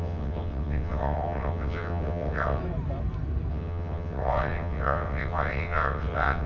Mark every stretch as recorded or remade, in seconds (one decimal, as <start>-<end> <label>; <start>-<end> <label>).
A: 0.0-2.6 remade; 2.6-3.5 recorded; 3.5-6.5 remade